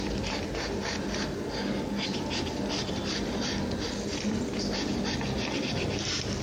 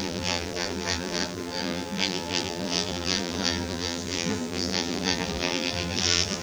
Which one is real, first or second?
first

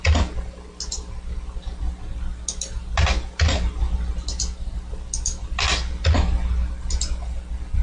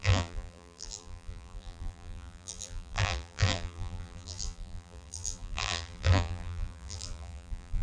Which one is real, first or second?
first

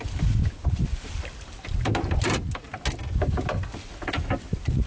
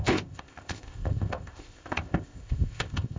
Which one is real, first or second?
first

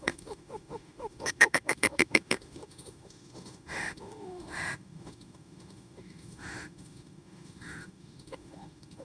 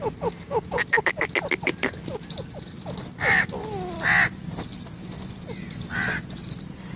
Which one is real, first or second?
second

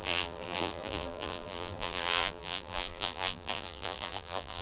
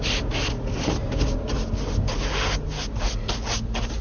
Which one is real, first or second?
second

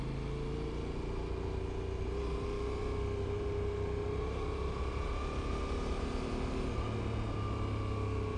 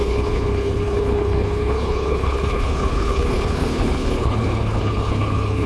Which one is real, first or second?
first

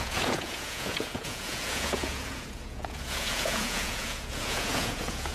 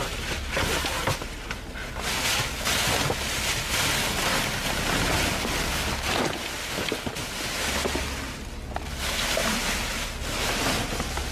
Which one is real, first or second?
second